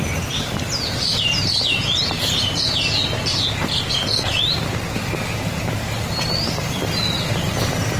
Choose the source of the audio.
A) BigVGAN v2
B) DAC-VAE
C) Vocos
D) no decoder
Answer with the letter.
D